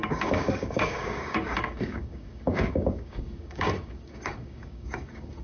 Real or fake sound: fake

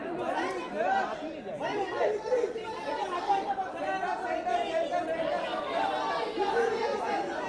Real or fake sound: fake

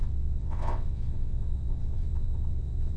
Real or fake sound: fake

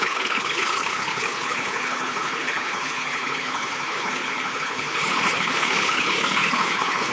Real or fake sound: fake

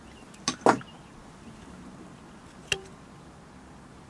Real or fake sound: real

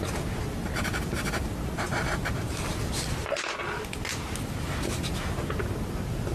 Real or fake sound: real